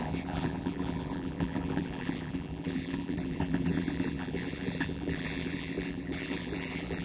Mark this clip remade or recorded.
remade